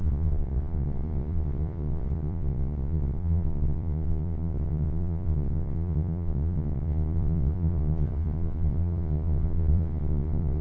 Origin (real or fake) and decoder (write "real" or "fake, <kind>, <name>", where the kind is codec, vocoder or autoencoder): fake, vocoder, Vocos